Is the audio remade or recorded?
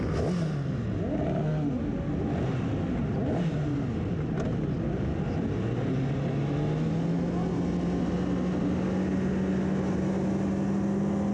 recorded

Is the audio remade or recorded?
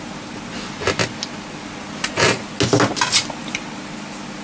recorded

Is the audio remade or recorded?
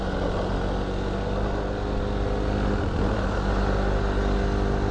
recorded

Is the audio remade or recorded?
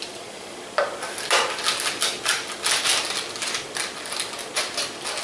recorded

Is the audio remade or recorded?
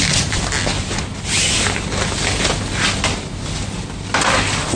recorded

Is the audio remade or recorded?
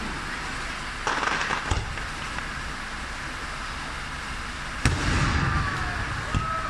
recorded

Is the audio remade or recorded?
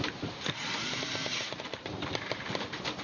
remade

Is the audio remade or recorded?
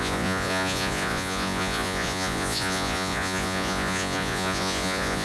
remade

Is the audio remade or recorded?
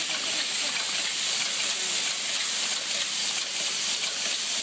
recorded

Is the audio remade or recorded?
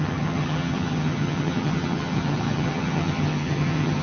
remade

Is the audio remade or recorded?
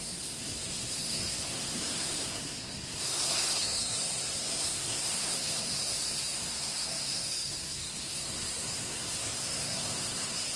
remade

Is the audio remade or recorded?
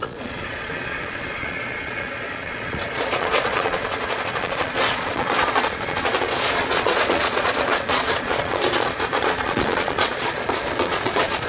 remade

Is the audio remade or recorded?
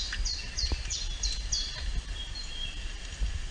recorded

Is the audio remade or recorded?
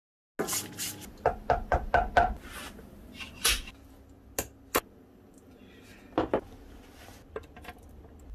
recorded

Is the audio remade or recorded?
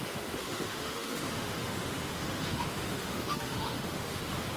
remade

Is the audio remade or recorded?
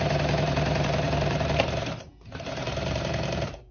remade